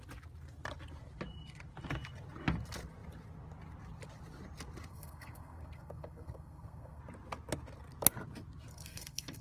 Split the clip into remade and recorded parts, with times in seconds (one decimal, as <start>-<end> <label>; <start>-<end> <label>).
0.0-4.9 recorded; 4.9-7.0 remade; 7.0-8.7 recorded; 8.7-9.4 remade